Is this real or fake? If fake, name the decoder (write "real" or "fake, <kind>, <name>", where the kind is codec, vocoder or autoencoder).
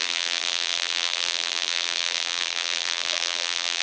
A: fake, vocoder, BigVGAN v2